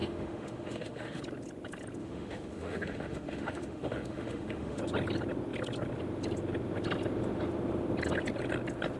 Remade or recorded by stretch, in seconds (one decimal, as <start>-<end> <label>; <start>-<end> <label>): 0.0-1.2 remade; 1.2-2.0 recorded; 2.0-4.8 remade; 4.8-9.0 recorded